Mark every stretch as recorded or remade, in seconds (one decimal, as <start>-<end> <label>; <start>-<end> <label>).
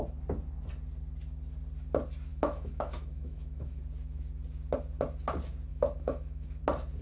0.0-2.3 recorded; 2.3-3.8 remade; 3.8-5.7 recorded; 5.7-6.6 remade; 6.6-7.0 recorded